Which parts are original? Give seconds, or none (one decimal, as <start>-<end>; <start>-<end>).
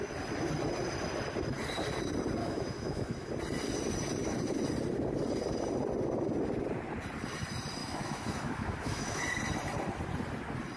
0.0-2.4; 3.3-7.8; 9.2-10.8